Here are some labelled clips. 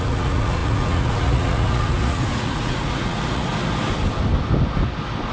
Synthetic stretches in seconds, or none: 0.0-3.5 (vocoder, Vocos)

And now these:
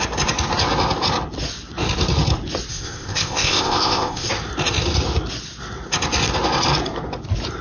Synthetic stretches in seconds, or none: 2.7-4.3 (codec, ZipCodec)

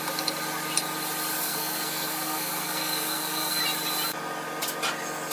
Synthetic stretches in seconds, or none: 1.4-3.6 (codec, SNAC)

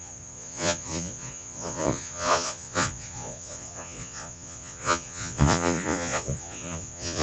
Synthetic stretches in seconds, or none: 0.0-7.2 (vocoder, Vocos)